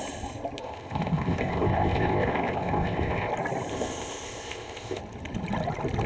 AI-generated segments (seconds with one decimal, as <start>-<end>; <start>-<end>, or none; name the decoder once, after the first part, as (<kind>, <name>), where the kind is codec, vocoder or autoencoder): 0.6-3.3 (codec, ZipCodec); 3.7-5.0